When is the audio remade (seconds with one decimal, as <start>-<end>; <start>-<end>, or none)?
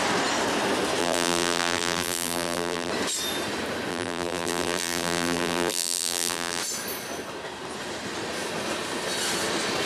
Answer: 1.0-2.9; 3.9-6.6